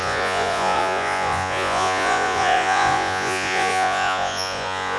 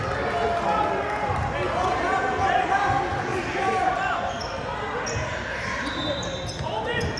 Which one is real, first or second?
second